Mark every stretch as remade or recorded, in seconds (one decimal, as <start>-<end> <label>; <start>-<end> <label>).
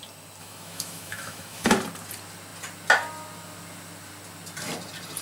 0.0-0.4 recorded; 0.4-1.7 remade; 1.7-5.2 recorded